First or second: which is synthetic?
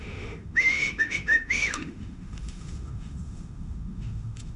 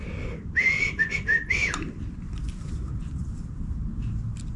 first